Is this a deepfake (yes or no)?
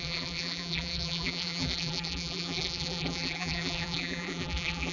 yes